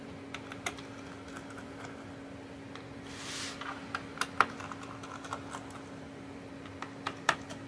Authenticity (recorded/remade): recorded